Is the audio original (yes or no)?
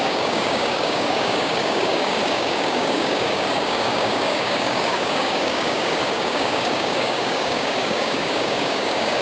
no